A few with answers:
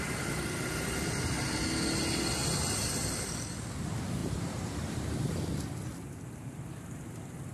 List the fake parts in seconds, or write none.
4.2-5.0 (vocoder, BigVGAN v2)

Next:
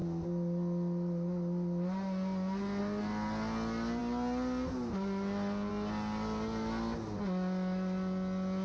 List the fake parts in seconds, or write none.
none

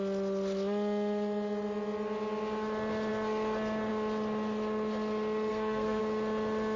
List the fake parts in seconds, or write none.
5.5-6.0 (codec, SNAC)

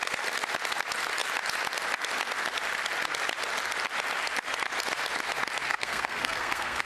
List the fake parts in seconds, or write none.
5.7-6.9 (codec, SNAC)